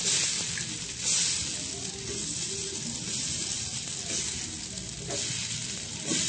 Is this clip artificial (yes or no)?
no